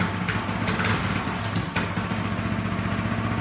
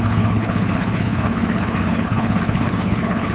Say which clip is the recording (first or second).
first